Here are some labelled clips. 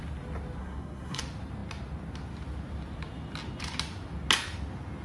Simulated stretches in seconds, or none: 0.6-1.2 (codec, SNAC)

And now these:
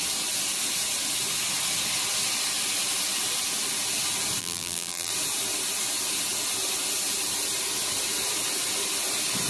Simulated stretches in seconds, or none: 4.4-5.1 (vocoder, BigVGAN v2)

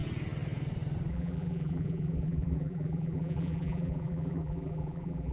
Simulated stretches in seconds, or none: 1.1-5.3 (vocoder, BigVGAN v2)